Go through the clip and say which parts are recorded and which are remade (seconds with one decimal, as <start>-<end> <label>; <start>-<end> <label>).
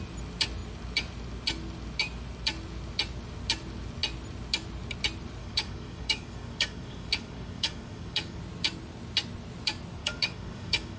0.0-5.4 recorded; 5.4-8.4 remade; 8.4-10.0 recorded; 10.0-11.0 remade